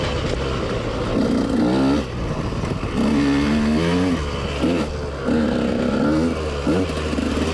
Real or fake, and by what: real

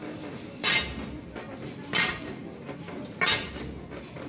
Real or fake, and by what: real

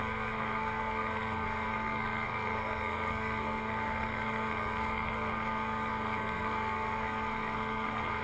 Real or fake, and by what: fake, codec, SNAC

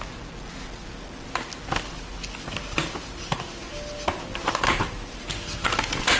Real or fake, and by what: real